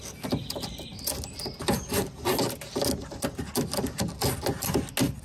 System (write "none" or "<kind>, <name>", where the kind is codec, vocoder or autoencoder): none